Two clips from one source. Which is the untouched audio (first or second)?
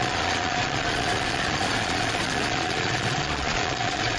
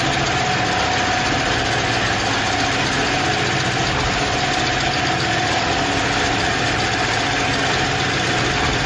second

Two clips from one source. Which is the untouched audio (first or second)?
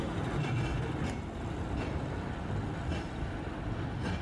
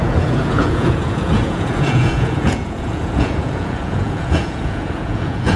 first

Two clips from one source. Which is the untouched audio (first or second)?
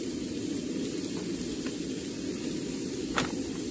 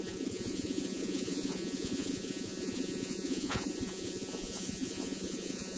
first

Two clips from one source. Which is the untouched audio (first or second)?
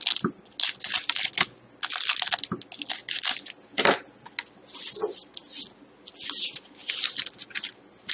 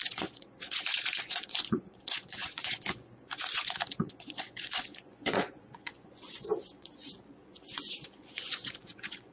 first